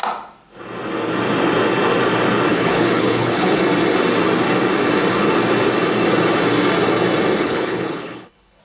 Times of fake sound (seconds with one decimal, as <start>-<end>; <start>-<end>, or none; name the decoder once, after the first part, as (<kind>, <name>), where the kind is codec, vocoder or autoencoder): 2.5-3.6 (codec, HILCodec); 7.4-8.6